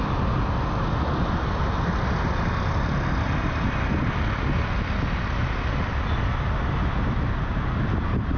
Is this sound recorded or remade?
recorded